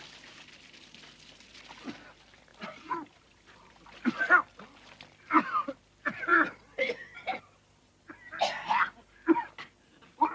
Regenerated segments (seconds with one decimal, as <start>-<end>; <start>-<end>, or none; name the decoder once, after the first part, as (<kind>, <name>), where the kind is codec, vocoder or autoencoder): 2.5-4.2 (vocoder, BigVGAN v2); 6.3-7.4